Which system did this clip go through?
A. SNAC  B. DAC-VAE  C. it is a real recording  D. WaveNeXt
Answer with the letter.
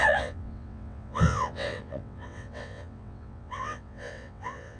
D